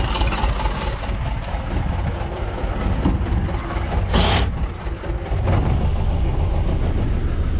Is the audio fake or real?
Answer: real